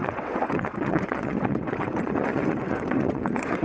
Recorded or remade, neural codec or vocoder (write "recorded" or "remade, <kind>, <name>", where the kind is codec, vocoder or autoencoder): remade, vocoder, WaveNeXt